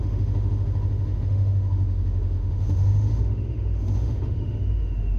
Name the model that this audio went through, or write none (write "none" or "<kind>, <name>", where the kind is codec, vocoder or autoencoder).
autoencoder, DAC-VAE